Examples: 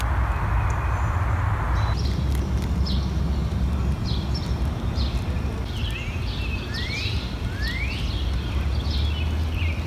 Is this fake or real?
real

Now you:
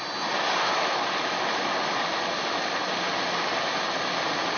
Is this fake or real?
real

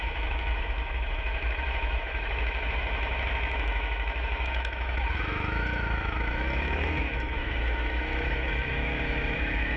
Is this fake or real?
fake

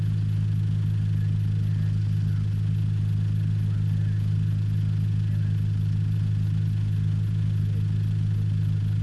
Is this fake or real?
real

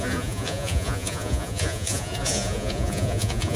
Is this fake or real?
fake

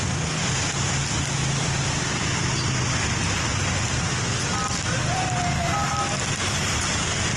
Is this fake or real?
real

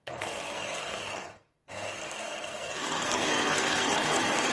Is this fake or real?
fake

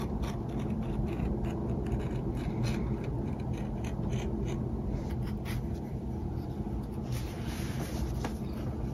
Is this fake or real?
real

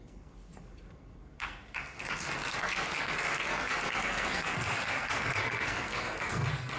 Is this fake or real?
fake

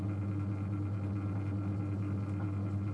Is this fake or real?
real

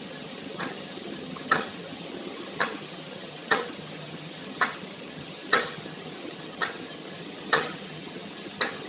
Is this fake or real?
fake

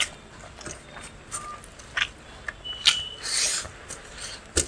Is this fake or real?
real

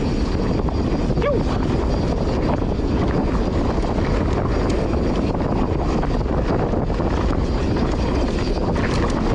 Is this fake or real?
real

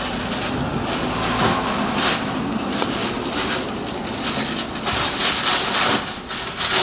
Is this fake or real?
real